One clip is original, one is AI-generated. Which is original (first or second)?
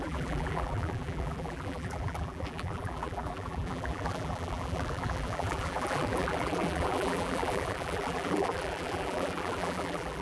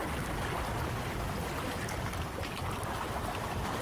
second